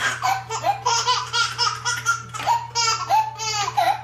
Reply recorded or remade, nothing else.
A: recorded